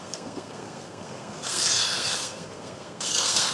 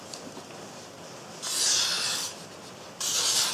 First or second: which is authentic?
second